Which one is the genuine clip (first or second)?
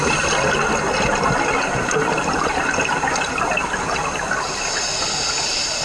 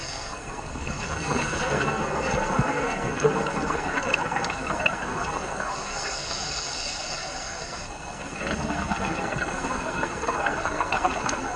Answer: first